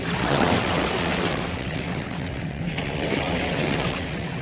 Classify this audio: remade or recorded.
remade